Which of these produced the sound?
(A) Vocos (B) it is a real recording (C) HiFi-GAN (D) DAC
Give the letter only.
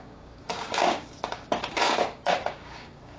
D